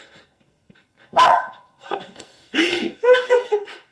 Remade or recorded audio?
remade